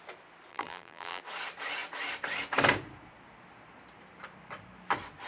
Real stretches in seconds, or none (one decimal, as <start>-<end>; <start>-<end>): 0.0-0.5; 1.2-5.3